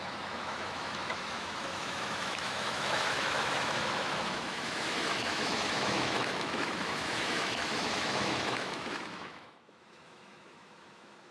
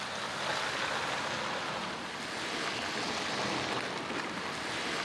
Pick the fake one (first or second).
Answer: first